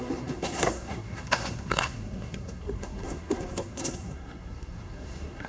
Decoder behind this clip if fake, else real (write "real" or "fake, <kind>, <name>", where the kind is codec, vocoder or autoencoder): fake, codec, SNAC